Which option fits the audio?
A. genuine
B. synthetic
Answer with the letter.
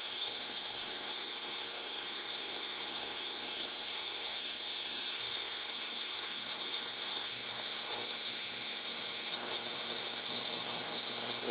B